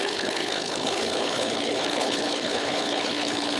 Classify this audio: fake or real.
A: fake